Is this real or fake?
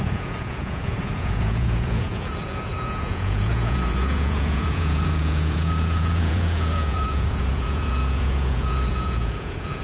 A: fake